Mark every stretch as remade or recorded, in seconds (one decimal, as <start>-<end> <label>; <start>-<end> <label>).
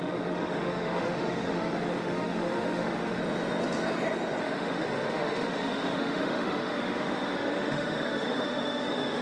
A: 0.0-3.2 remade; 3.2-4.4 recorded; 4.4-9.2 remade